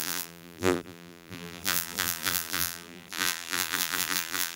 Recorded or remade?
remade